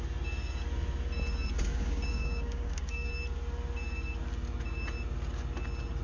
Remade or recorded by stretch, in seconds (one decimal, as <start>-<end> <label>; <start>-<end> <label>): 0.0-1.7 recorded; 1.7-3.1 remade; 3.1-6.0 recorded